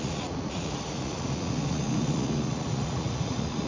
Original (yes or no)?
no